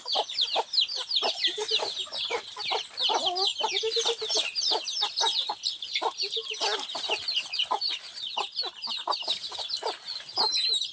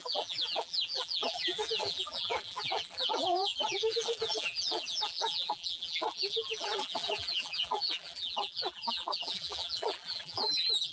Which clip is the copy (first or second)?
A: second